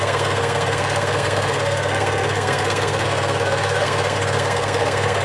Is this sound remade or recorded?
remade